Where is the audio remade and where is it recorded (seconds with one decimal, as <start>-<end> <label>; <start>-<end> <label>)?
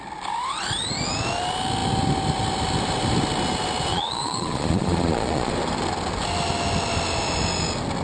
0.0-3.9 recorded; 3.9-5.5 remade; 5.5-8.0 recorded